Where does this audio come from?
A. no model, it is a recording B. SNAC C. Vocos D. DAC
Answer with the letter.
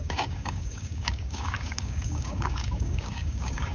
D